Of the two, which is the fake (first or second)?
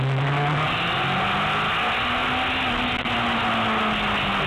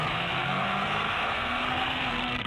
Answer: second